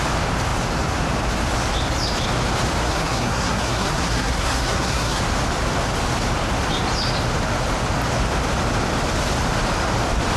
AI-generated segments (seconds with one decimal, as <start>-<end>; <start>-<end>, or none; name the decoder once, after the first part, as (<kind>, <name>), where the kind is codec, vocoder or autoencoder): 2.8-5.2 (codec, SNAC)